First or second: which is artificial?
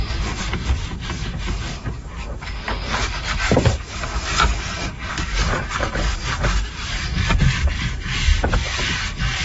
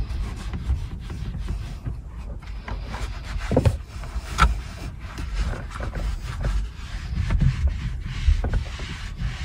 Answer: first